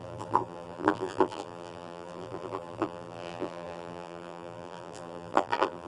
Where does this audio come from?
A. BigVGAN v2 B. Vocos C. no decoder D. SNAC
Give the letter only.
A